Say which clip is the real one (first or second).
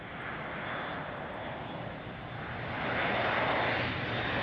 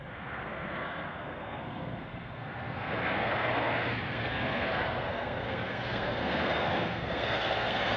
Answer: first